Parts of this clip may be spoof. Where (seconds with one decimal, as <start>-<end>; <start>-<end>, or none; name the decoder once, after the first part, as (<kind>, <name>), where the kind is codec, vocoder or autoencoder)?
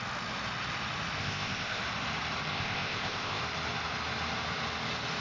1.2-1.8 (codec, ZipCodec); 2.5-3.4